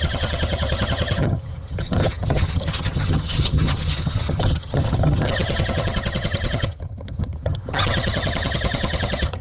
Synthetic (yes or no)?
yes